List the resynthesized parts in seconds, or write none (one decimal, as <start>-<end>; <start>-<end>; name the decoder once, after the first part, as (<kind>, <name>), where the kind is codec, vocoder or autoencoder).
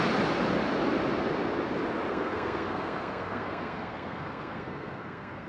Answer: 2.1-5.5 (codec, SNAC)